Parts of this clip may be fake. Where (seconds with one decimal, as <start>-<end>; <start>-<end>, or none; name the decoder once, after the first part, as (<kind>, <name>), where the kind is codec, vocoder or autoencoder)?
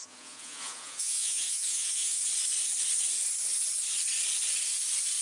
0.0-2.2 (vocoder, Vocos)